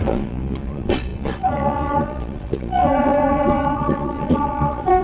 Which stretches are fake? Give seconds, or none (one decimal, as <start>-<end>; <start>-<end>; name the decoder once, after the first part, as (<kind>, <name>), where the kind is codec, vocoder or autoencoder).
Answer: 0.0-5.0 (vocoder, Vocos)